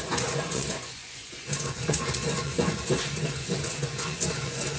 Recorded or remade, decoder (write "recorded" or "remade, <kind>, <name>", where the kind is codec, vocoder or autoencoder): remade, vocoder, Vocos